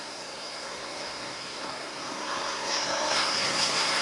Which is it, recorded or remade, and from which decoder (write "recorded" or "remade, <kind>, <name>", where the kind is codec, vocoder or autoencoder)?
remade, codec, SNAC